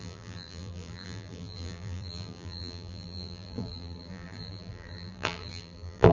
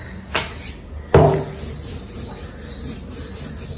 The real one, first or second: second